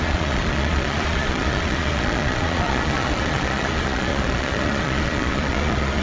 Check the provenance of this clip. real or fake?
fake